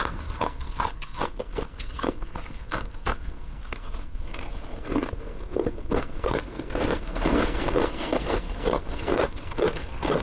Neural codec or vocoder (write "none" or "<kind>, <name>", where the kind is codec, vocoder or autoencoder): codec, SNAC